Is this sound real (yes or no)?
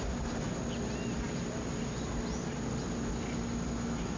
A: yes